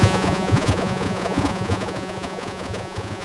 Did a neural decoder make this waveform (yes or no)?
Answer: yes